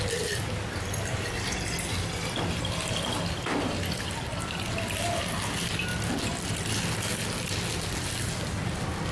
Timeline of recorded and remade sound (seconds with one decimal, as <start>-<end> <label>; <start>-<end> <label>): 0.0-9.1 recorded